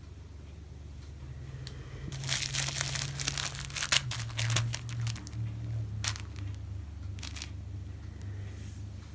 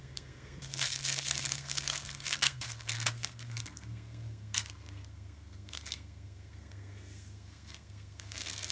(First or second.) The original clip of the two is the first